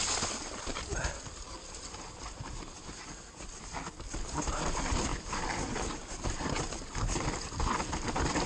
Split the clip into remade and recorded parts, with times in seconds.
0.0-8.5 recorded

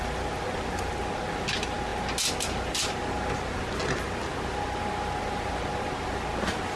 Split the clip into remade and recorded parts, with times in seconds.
0.0-6.8 recorded